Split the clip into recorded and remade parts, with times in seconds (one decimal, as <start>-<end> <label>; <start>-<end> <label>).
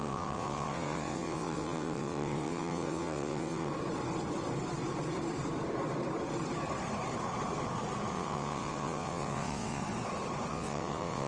0.0-3.7 remade; 3.7-8.1 recorded; 8.1-9.8 remade; 9.8-10.5 recorded; 10.5-11.3 remade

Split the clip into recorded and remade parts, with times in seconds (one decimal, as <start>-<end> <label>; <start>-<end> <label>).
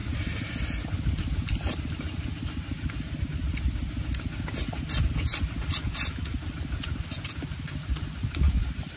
0.0-9.0 recorded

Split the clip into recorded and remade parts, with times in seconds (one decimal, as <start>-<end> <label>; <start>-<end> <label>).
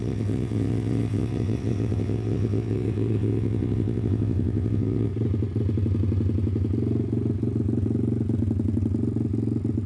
0.0-5.1 remade; 5.1-9.9 recorded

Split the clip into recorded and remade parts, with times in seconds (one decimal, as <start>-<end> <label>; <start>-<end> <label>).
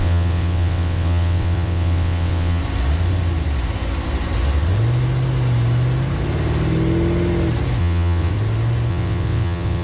0.0-2.6 remade; 2.6-7.8 recorded; 7.8-8.3 remade; 8.3-8.9 recorded; 8.9-9.8 remade